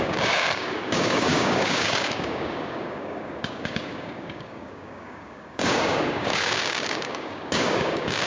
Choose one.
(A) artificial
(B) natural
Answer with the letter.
A